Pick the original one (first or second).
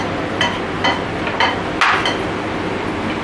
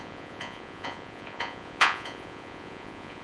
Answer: first